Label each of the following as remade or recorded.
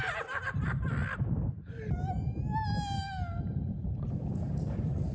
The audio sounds recorded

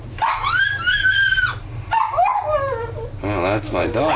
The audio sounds recorded